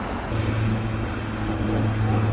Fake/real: real